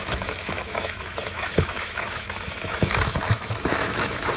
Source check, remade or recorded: remade